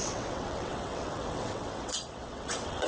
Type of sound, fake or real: fake